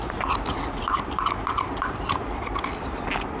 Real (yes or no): no